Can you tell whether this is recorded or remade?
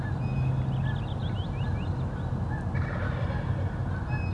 recorded